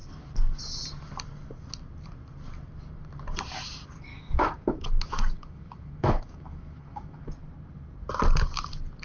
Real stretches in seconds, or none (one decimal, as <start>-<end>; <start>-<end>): 0.0-4.1; 7.3-9.0